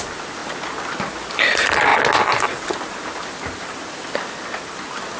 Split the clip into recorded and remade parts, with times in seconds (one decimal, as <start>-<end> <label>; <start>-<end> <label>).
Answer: 0.0-5.2 recorded